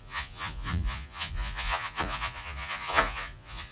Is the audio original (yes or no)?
no